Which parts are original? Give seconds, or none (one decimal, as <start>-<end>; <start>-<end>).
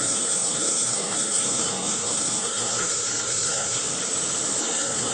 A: 3.8-4.6